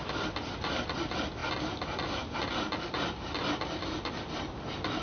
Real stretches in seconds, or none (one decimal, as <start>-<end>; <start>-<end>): 0.0-5.0